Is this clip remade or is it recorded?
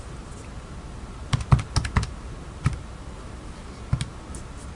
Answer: recorded